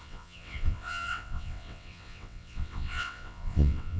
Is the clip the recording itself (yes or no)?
no